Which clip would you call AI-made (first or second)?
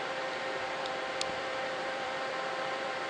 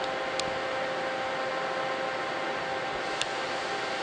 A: first